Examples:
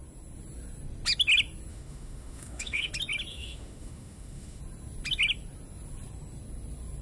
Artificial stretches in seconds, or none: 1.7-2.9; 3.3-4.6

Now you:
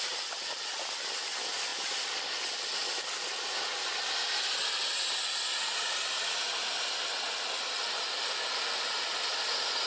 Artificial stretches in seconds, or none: none

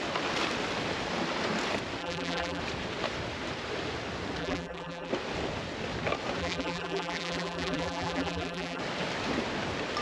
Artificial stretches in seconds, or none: 2.0-2.6; 4.4-5.1; 6.4-8.8

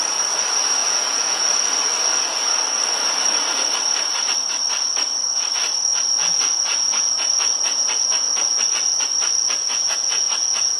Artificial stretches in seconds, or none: 0.8-1.5; 5.9-8.6; 9.4-10.8

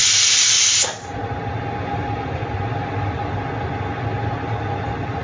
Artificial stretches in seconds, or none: none

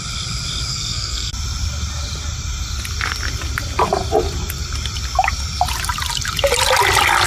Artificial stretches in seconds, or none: 0.7-1.3

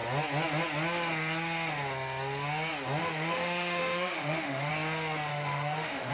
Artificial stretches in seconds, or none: 3.0-4.7; 5.3-6.1

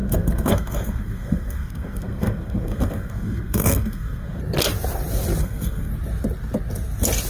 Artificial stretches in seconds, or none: 0.0-4.4; 5.4-5.9